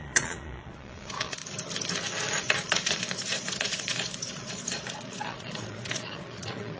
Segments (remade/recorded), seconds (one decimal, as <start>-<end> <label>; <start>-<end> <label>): 0.0-1.4 remade; 1.4-2.4 recorded; 2.4-6.8 remade